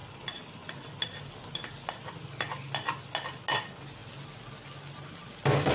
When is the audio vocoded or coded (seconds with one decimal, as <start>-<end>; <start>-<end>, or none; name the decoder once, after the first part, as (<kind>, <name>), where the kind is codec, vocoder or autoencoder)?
none